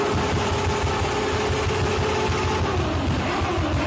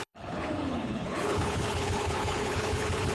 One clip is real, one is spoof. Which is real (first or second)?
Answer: first